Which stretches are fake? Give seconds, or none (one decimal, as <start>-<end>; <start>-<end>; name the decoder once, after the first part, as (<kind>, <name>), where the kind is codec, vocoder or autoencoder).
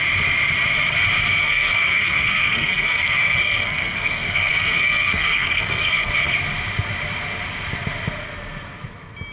1.4-6.1 (codec, SNAC)